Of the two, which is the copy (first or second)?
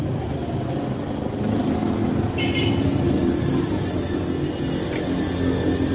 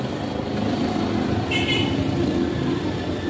second